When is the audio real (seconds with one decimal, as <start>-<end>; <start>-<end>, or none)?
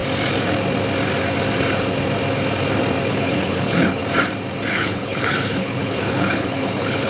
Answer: 0.0-3.1; 4.0-4.7